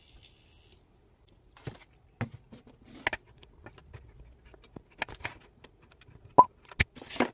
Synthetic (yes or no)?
no